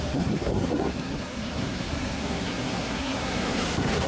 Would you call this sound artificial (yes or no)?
yes